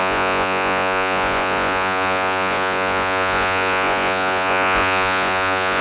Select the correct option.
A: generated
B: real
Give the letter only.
A